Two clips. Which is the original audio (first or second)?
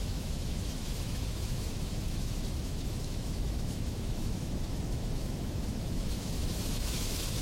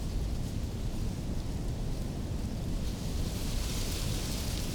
second